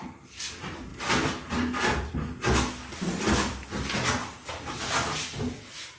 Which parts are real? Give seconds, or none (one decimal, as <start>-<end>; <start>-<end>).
0.0-6.0